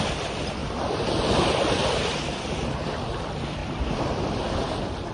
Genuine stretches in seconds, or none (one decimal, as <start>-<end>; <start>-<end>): 0.0-0.6; 3.1-3.6